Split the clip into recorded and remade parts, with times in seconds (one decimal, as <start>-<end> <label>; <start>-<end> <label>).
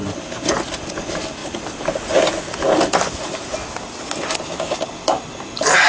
0.0-1.4 remade; 1.4-4.9 recorded; 4.9-5.9 remade